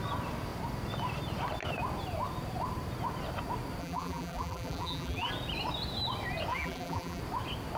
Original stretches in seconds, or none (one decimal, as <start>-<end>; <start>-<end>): 0.0-3.8; 5.3-6.5; 7.2-7.8